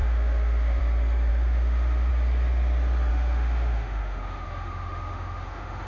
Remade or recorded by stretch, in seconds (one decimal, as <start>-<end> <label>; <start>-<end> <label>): 0.0-0.8 remade; 0.8-1.3 recorded; 1.3-2.1 remade; 2.1-3.1 recorded; 3.1-5.9 remade